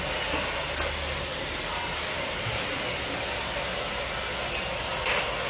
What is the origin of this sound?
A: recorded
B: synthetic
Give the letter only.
A